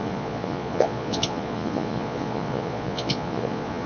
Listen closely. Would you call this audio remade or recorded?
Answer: remade